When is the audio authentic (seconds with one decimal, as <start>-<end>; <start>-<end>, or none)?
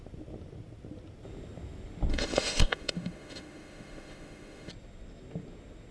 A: 0.0-2.1; 4.7-5.9